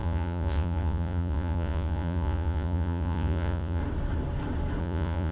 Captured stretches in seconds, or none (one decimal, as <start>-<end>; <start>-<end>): 3.8-4.8